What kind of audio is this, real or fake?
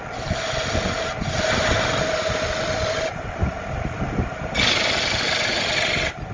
real